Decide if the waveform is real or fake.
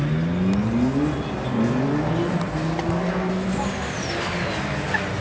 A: real